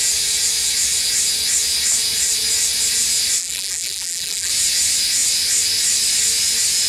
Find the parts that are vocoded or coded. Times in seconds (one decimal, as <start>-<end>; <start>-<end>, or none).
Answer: 3.4-4.5